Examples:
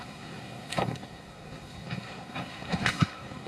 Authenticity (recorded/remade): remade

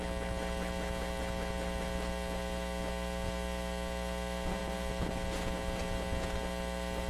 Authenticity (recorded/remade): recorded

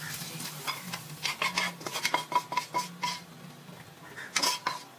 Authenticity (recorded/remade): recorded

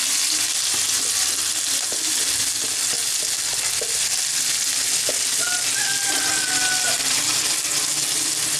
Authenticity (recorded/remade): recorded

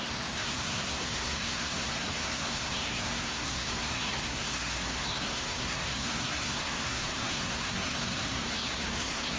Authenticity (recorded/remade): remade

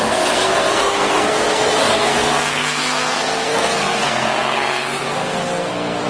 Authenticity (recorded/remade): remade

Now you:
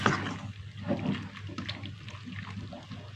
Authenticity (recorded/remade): recorded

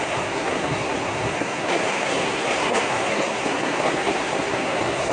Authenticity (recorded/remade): remade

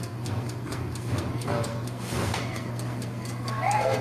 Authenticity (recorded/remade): remade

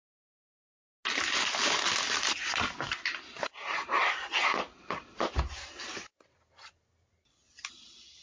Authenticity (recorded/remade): recorded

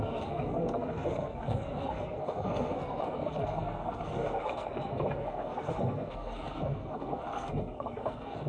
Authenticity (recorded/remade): remade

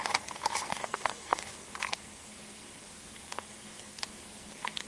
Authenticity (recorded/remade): remade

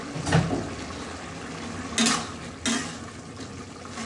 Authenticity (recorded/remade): recorded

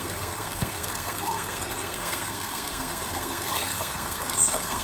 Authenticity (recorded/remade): remade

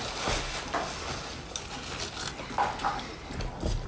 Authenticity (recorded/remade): recorded